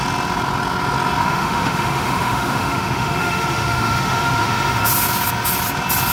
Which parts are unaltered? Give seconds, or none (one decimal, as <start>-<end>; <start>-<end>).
0.0-1.2; 4.9-6.1